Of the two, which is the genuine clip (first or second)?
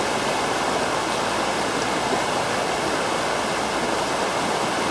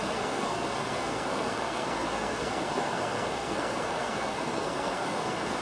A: first